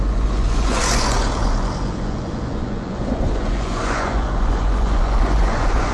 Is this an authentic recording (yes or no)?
no